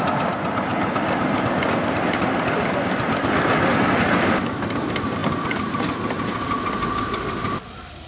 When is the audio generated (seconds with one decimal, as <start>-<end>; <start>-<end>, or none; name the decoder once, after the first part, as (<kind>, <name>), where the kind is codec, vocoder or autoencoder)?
none